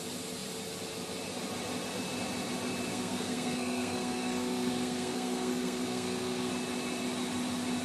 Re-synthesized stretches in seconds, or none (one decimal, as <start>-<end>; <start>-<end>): 2.9-6.5

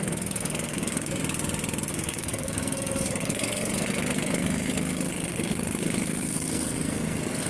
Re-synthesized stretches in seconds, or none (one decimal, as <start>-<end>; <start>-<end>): 0.0-1.2; 1.9-7.5

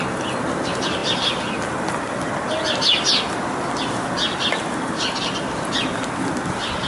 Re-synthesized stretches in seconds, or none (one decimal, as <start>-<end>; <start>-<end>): none